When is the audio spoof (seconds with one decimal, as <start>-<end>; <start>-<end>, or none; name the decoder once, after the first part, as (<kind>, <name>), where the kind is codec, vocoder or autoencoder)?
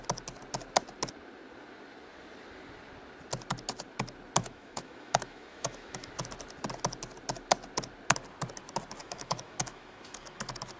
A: 4.4-6.1 (autoencoder, DAC-VAE); 9.0-10.4